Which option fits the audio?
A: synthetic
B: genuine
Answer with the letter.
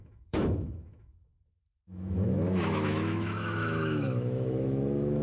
A